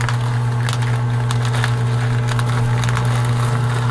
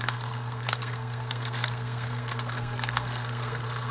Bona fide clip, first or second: first